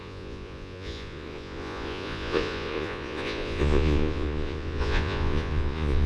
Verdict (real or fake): fake